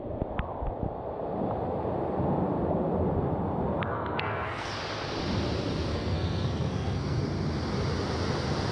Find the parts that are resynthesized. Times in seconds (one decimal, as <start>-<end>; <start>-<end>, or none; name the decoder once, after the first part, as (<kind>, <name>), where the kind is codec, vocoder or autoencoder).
3.9-4.7 (codec, SNAC); 5.9-7.2